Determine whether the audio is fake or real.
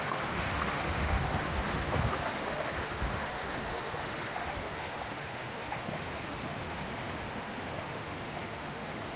fake